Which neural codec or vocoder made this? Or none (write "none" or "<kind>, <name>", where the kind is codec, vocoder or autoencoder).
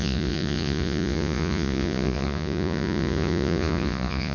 vocoder, Vocos